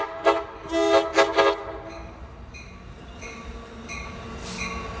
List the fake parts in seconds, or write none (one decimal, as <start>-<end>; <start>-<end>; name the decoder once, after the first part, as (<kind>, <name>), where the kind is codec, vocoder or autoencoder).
none